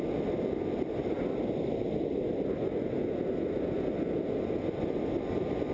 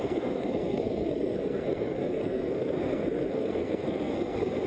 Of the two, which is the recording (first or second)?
first